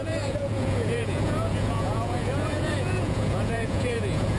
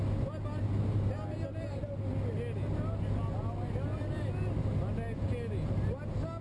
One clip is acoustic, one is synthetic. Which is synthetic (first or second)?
first